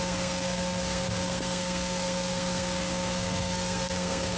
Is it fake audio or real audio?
fake